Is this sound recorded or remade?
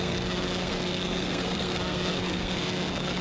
remade